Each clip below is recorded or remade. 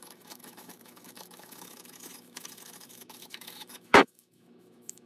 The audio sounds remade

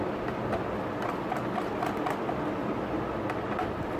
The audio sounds recorded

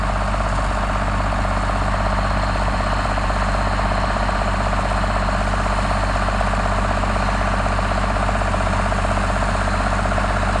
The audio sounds recorded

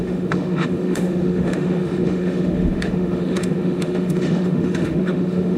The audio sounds remade